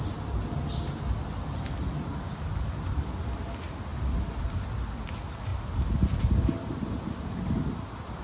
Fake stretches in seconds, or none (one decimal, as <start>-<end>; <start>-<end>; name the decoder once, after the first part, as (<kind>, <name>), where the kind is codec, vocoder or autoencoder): none